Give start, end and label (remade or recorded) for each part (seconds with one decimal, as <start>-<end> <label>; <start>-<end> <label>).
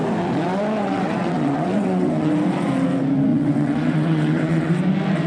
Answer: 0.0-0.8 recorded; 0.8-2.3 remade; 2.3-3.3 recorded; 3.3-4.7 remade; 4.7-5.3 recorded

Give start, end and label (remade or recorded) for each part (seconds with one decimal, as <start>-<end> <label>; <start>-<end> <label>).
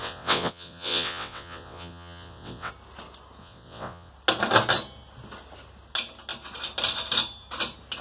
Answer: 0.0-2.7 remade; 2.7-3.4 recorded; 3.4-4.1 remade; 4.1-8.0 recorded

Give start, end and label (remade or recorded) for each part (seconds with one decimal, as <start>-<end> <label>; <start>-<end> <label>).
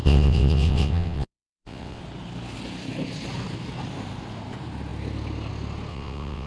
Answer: 0.0-2.0 remade; 2.0-5.9 recorded; 5.9-6.5 remade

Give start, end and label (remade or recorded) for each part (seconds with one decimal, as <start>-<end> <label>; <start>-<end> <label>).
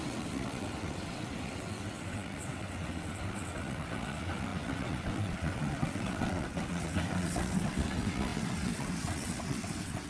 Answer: 0.0-10.1 remade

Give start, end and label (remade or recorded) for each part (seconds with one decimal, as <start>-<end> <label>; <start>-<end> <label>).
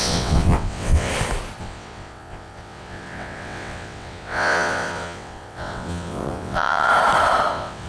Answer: 0.0-1.1 remade; 1.1-1.6 recorded; 1.6-6.9 remade; 6.9-7.5 recorded; 7.5-7.9 remade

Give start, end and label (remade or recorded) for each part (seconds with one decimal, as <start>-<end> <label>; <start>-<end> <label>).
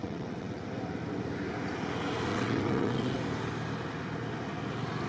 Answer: 0.0-0.6 remade; 0.6-2.3 recorded; 2.3-3.2 remade; 3.2-5.1 recorded